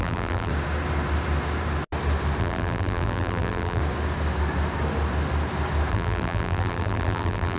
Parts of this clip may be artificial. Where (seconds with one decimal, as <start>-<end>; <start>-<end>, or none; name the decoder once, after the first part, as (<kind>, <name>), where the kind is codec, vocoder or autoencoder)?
0.0-0.5 (vocoder, BigVGAN v2); 2.4-3.8; 5.9-7.6